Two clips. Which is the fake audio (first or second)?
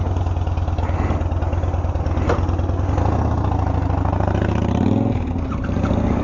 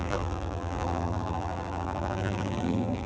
second